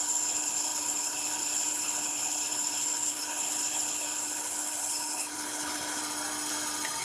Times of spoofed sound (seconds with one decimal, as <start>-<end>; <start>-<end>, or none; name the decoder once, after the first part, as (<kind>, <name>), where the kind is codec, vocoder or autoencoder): 0.0-6.0 (codec, HILCodec)